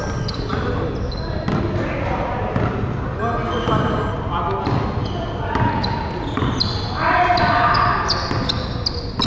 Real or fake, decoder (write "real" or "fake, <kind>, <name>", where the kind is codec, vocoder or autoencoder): real